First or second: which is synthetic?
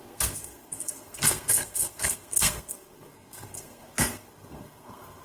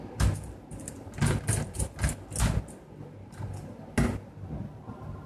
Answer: first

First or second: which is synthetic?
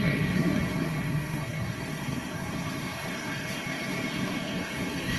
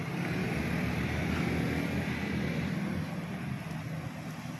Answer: first